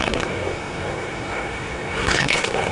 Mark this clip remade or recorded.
remade